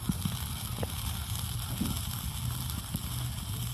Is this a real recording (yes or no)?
yes